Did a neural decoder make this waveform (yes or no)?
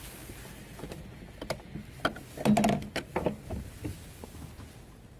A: no